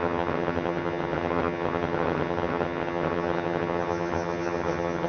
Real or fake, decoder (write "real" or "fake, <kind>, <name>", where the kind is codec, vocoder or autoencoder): fake, vocoder, HiFi-GAN